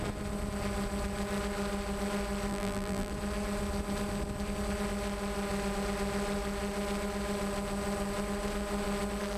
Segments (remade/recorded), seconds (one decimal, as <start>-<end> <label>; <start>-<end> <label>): 0.0-2.5 recorded; 2.5-3.1 remade; 3.1-9.4 recorded